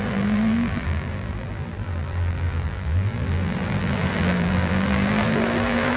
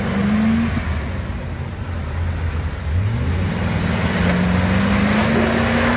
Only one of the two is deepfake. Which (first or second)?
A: first